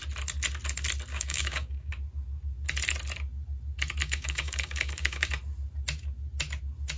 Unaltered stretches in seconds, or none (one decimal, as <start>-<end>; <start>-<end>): 0.0-1.1; 1.9-4.0; 5.3-7.0